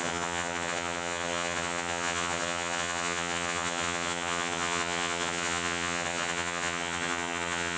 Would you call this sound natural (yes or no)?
no